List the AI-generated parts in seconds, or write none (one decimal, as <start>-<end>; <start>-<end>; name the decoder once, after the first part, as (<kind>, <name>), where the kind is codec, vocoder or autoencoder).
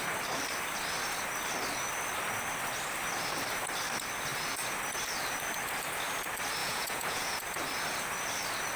6.6-7.4 (vocoder, Vocos)